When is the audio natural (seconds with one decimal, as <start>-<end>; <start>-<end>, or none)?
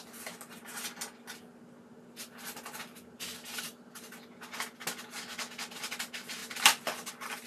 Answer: 0.0-7.5